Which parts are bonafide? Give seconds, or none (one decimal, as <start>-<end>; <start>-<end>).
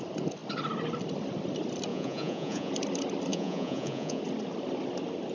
0.0-1.9; 2.7-3.3; 4.2-5.3